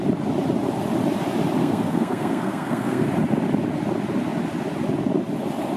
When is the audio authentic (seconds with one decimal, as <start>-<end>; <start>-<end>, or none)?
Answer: 0.0-1.6; 3.1-5.8